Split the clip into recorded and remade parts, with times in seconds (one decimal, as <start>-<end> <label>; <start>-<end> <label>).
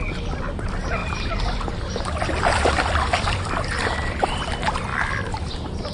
0.0-1.0 recorded; 1.0-4.4 remade; 4.4-4.9 recorded; 4.9-5.5 remade; 5.5-5.9 recorded